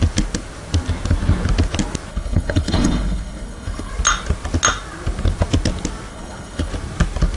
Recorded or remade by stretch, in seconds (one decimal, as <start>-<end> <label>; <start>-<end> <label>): 0.0-2.1 recorded; 2.1-3.9 remade; 3.9-6.1 recorded; 6.1-6.7 remade; 6.7-7.4 recorded